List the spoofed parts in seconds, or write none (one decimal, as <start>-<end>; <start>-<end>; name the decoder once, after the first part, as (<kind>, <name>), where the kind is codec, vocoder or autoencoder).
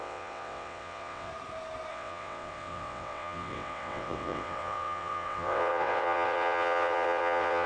0.0-1.3 (vocoder, WaveNeXt); 1.9-7.7